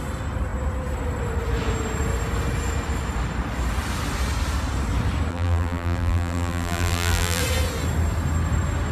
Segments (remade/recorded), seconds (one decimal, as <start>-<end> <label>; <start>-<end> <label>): 0.0-5.3 recorded; 5.3-7.4 remade; 7.4-8.9 recorded